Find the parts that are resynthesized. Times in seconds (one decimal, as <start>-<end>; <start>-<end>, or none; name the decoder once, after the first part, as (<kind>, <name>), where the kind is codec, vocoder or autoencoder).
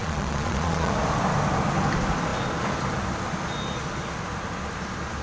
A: 0.0-0.9 (vocoder, Vocos)